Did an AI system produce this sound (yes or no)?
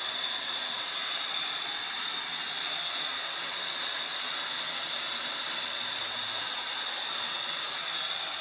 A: no